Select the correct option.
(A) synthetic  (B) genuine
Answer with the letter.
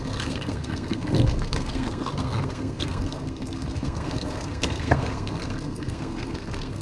A